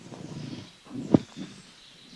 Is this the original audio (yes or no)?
yes